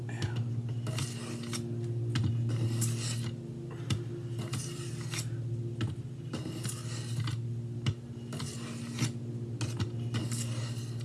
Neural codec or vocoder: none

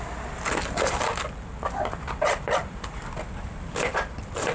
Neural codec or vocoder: none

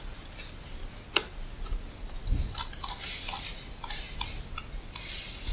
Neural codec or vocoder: none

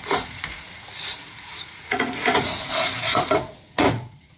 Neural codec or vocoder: vocoder, Vocos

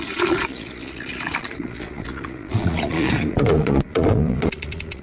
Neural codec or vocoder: vocoder, Vocos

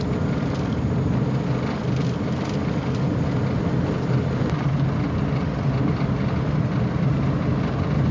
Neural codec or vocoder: none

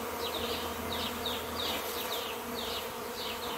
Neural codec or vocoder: none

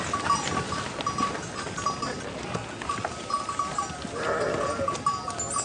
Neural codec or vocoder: none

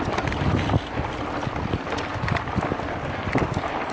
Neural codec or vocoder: none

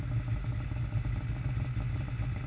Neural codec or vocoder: none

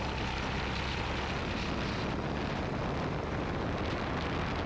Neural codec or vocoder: none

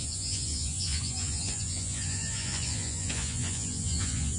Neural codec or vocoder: vocoder, Vocos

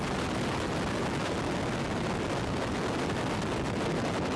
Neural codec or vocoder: none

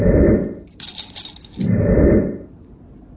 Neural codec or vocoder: none